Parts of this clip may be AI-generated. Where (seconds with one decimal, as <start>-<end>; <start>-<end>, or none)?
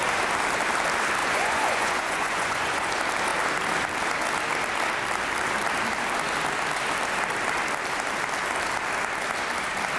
1.2-2.9